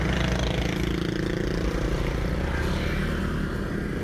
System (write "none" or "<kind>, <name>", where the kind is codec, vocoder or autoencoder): none